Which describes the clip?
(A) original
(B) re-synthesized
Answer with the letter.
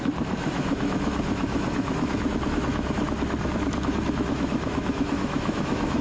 B